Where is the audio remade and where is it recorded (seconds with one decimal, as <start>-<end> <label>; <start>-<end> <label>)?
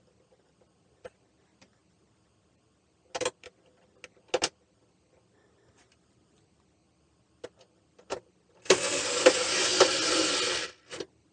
0.0-11.3 recorded